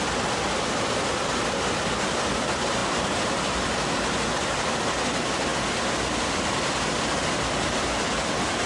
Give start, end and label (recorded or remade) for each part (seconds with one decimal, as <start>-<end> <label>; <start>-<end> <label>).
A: 0.0-8.7 recorded